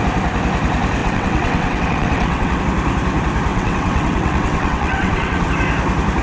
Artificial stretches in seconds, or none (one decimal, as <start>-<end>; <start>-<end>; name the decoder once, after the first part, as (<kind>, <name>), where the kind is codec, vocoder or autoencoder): 1.0-2.6 (vocoder, WaveNeXt); 3.5-5.5